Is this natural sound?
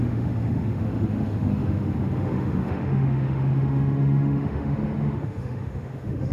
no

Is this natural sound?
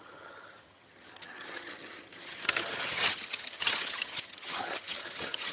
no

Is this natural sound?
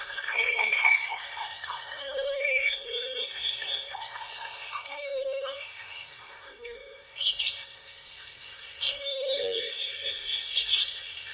no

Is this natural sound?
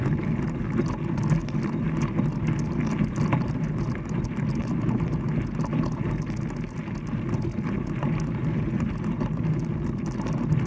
yes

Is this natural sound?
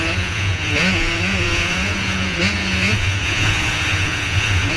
no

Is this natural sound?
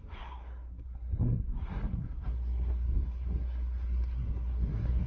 no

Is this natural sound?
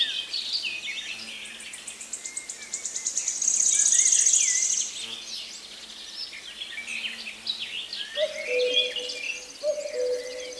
yes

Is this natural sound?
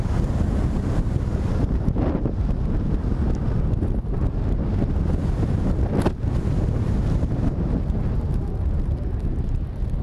yes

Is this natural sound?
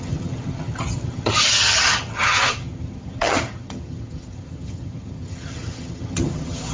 no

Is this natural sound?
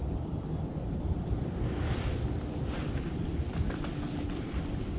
yes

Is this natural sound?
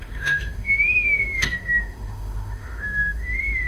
no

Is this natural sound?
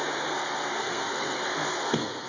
no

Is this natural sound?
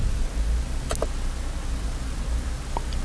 yes